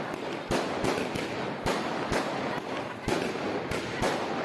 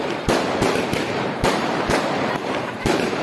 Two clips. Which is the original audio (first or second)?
first